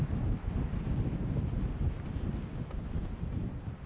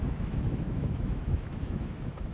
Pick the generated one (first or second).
second